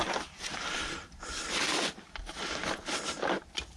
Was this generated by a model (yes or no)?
no